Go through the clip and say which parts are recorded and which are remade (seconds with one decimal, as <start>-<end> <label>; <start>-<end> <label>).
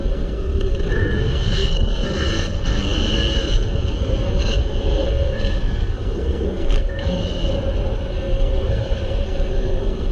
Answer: 0.0-7.2 remade; 7.2-8.1 recorded; 8.1-10.1 remade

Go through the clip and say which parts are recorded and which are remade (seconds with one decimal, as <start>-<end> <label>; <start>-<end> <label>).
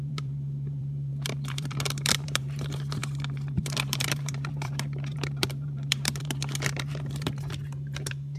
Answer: 0.0-8.4 remade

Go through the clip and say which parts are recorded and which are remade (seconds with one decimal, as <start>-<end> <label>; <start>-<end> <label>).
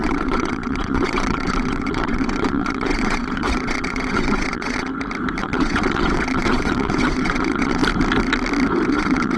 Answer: 0.0-4.9 remade; 4.9-5.4 recorded; 5.4-7.8 remade; 7.8-8.9 recorded; 8.9-9.4 remade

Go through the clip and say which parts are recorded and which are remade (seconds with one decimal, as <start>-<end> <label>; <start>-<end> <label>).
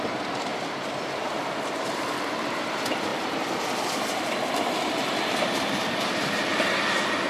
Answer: 0.0-7.3 recorded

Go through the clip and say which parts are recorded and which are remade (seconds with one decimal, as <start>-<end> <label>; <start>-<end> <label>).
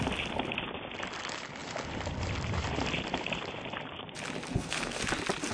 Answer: 0.0-4.5 recorded; 4.5-5.0 remade; 5.0-5.5 recorded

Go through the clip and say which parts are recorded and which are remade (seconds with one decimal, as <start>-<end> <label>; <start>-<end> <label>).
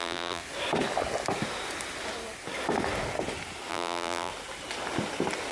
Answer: 0.0-0.4 remade; 0.4-3.7 recorded; 3.7-4.3 remade; 4.3-5.5 recorded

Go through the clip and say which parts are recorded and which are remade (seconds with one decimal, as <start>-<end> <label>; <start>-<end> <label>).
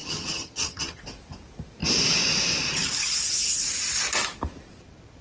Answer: 0.0-1.0 remade; 1.0-5.2 recorded